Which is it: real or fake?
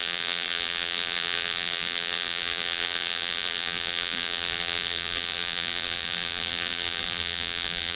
fake